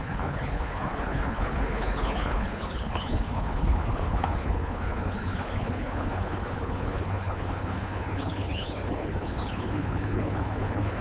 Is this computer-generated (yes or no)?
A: yes